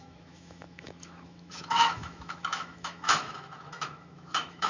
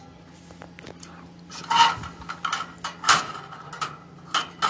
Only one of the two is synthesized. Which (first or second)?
first